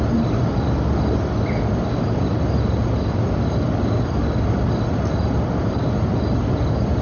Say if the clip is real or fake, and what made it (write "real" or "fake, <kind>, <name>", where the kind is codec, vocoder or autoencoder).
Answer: real